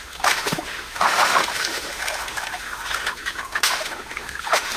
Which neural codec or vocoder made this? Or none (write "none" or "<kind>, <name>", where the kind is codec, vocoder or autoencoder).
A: autoencoder, DAC-VAE